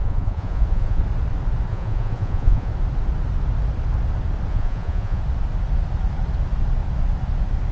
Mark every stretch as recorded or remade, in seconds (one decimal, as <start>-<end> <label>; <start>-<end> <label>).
0.0-1.0 remade; 1.0-1.7 recorded; 1.7-2.7 remade; 2.7-4.5 recorded; 4.5-5.2 remade; 5.2-7.7 recorded